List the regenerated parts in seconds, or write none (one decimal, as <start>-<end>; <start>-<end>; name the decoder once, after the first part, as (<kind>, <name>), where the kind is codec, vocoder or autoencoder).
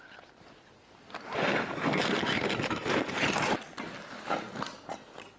none